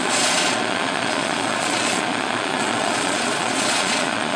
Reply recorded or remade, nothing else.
remade